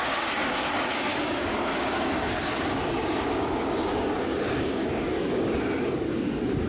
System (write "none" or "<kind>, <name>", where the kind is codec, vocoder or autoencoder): codec, DAC